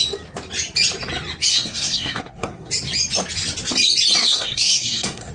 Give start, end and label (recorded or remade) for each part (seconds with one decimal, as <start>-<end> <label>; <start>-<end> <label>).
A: 0.0-1.5 recorded; 1.5-2.7 remade; 2.7-4.2 recorded; 4.2-5.3 remade